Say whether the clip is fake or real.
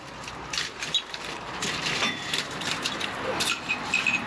fake